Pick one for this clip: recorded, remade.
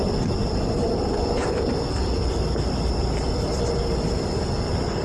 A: remade